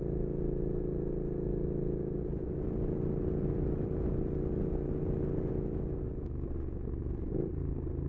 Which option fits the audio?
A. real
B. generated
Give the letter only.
A